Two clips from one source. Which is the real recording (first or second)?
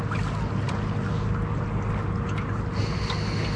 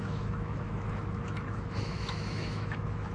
first